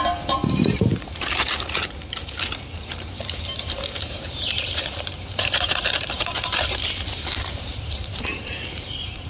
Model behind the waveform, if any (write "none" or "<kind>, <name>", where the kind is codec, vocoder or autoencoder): vocoder, BigVGAN v2